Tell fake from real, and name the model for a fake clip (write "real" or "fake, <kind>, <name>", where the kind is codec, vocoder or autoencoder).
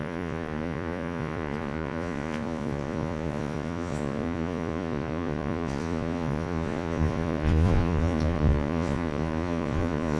fake, vocoder, Vocos